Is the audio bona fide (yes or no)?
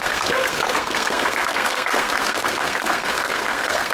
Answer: no